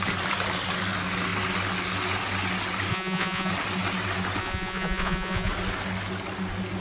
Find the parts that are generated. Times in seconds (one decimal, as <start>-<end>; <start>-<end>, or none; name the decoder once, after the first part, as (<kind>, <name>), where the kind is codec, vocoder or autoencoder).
2.9-3.5 (vocoder, Vocos); 4.4-5.5